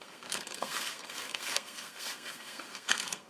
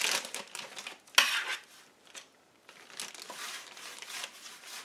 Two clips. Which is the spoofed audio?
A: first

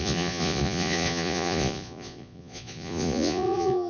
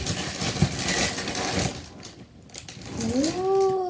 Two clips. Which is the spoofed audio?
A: first